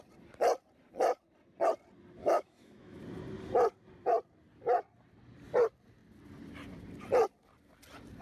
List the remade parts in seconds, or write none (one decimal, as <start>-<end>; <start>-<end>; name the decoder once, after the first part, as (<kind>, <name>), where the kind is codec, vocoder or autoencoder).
2.2-3.0 (autoencoder, DAC-VAE)